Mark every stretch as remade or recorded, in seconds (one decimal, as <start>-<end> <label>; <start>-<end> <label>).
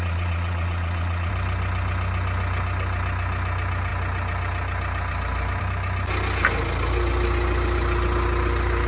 0.0-1.3 remade; 1.3-8.9 recorded